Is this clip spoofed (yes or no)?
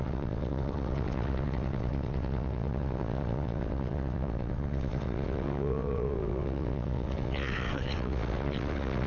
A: yes